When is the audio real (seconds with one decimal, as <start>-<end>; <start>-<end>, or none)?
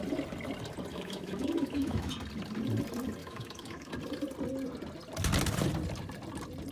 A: 0.0-0.9; 2.1-3.2; 3.9-6.7